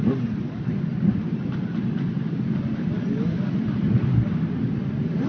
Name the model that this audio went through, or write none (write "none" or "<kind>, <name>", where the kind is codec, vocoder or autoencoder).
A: none